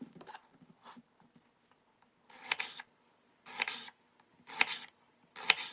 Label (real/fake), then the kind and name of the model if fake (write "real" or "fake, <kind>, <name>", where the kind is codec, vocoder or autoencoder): real